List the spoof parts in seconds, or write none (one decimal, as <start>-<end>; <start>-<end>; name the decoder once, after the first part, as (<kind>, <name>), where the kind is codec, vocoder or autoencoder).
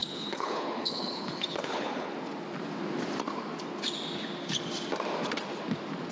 0.0-2.1 (codec, HILCodec)